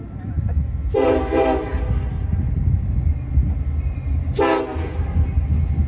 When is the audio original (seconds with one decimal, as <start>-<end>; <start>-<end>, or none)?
0.0-5.9